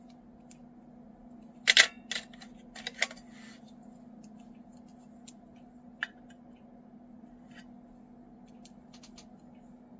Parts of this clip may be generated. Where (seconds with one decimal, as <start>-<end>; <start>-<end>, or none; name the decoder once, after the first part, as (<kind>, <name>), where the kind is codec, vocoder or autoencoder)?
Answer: none